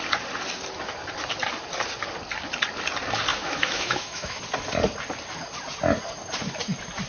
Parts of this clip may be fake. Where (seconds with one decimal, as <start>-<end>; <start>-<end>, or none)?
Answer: 3.3-4.4